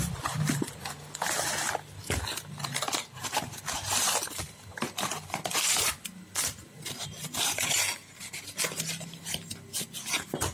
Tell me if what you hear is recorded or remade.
recorded